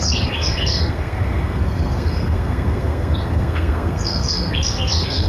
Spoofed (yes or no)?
yes